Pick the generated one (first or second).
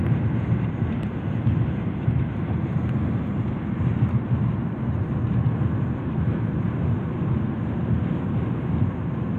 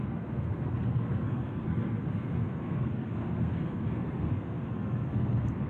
second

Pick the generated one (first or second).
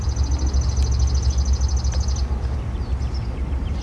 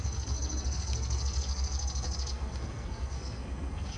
second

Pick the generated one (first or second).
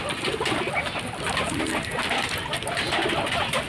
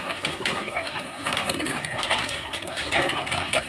second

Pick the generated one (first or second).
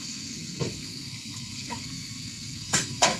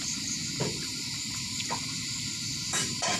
first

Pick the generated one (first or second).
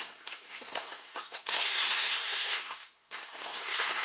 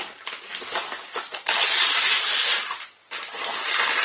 first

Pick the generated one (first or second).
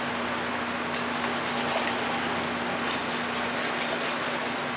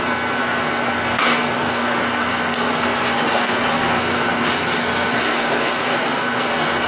second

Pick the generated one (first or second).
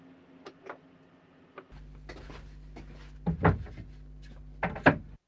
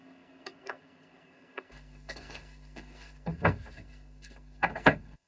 second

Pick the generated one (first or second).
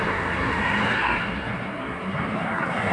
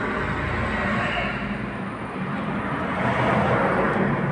first